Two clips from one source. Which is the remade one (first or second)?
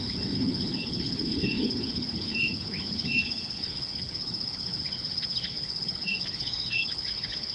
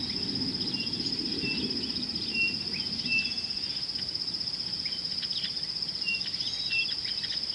first